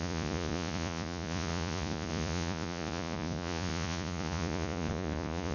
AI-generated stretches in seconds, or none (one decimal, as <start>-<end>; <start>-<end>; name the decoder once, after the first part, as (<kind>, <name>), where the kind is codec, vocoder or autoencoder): 0.0-5.5 (vocoder, Vocos)